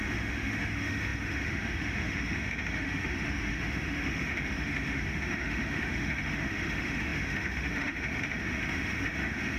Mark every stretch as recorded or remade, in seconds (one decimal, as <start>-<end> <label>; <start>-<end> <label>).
0.0-9.6 remade